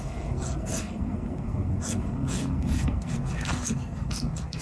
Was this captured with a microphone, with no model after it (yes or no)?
no